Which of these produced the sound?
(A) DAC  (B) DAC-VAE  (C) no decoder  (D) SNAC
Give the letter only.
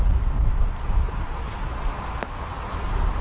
C